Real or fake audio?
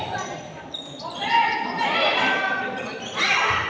real